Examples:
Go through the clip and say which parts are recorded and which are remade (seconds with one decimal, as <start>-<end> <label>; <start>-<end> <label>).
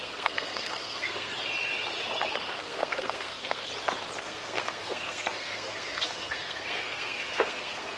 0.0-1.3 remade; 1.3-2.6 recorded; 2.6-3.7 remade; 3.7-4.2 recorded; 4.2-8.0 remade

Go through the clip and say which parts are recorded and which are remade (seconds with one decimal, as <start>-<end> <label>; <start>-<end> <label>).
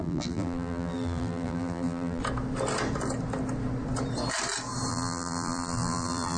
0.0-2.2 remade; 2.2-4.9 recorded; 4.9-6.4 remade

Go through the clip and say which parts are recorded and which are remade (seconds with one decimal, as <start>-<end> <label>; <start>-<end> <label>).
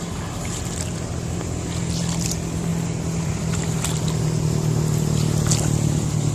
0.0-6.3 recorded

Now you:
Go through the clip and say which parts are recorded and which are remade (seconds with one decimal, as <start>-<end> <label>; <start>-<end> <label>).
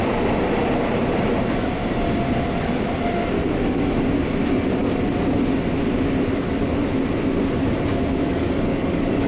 0.0-8.2 recorded; 8.2-9.3 remade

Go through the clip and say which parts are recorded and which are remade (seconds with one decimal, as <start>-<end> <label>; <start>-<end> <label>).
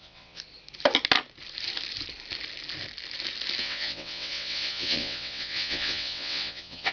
0.0-0.4 remade; 0.4-3.6 recorded; 3.6-6.9 remade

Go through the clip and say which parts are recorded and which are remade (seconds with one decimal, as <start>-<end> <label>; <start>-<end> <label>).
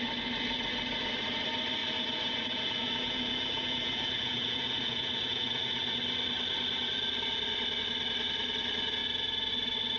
0.0-1.8 recorded; 1.8-5.5 remade; 5.5-10.0 recorded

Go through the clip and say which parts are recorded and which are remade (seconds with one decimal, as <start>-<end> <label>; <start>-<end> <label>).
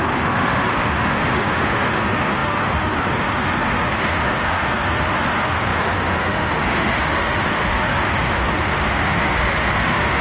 0.0-10.2 remade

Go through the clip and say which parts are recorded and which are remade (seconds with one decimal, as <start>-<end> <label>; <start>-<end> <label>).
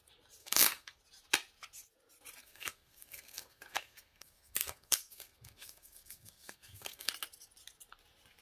0.0-0.4 recorded; 0.4-1.0 remade; 1.0-2.4 recorded; 2.4-7.1 remade; 7.1-8.4 recorded